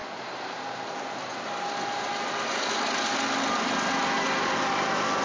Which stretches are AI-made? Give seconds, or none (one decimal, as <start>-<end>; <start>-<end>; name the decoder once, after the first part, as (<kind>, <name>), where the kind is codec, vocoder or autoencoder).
none